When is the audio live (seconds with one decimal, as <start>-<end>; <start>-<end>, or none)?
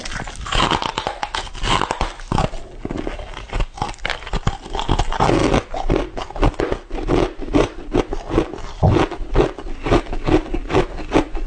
0.0-11.5